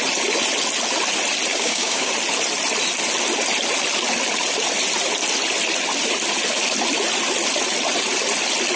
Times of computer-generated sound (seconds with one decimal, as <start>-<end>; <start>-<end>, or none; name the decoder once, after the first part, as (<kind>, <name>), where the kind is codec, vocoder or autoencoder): 1.5-2.1 (codec, DAC)